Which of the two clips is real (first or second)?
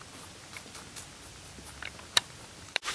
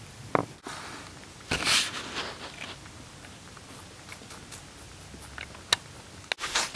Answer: second